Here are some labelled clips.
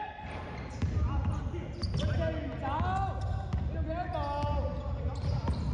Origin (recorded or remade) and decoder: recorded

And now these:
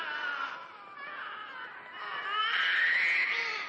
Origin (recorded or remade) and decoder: recorded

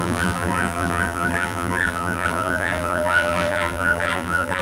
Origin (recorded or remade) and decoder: remade, vocoder, BigVGAN v2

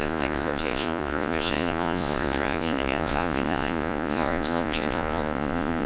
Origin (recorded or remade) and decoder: remade, vocoder, Vocos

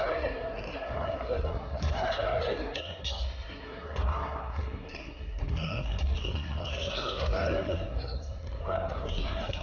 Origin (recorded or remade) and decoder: remade, codec, SNAC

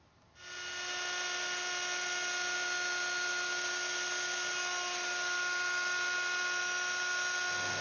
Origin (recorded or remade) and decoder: recorded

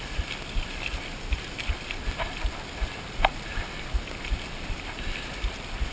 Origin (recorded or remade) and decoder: recorded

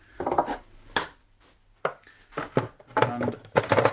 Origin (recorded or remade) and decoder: recorded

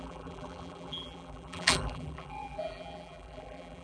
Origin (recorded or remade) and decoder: remade, vocoder, BigVGAN v2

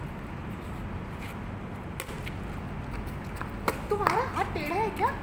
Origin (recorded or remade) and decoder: recorded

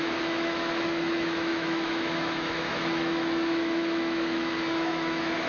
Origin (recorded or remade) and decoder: remade, autoencoder, DAC-VAE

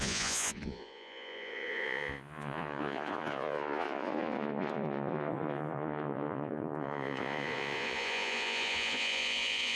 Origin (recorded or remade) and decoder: remade, vocoder, Vocos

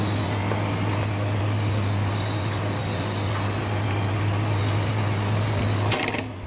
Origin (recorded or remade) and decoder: recorded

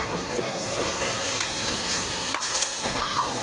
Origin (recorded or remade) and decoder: remade, codec, SNAC